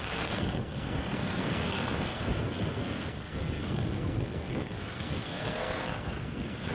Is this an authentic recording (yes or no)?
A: no